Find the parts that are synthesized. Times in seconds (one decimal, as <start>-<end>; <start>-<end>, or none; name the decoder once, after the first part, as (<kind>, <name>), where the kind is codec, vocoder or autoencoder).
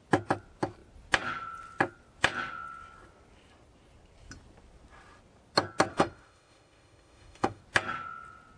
5.9-7.6 (autoencoder, DAC-VAE)